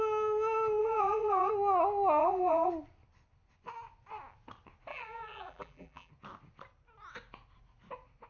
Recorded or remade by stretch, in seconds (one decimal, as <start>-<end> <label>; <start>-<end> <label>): 0.0-0.8 recorded; 0.8-1.5 remade; 1.5-2.2 recorded; 2.2-2.7 remade; 2.7-4.9 recorded; 4.9-6.1 remade; 6.1-8.3 recorded